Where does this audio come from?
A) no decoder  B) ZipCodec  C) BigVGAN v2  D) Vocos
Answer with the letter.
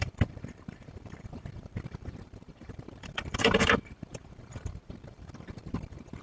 C